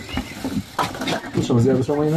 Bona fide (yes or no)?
yes